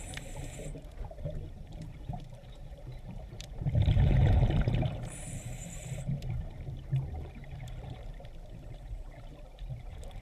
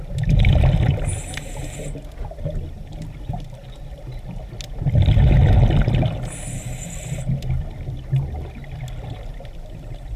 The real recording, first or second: second